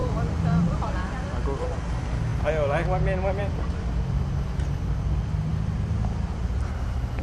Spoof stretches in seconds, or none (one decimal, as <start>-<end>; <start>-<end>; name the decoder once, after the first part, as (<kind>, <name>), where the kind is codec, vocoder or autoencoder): 0.0-0.9 (vocoder, BigVGAN v2)